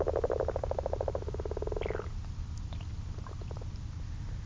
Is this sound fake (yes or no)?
no